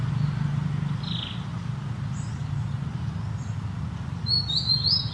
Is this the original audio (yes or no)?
yes